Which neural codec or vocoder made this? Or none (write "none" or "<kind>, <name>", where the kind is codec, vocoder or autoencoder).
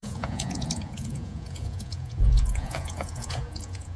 vocoder, Vocos